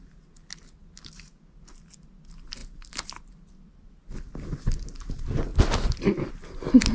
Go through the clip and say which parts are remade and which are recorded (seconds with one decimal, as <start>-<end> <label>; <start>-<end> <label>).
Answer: 0.0-6.9 recorded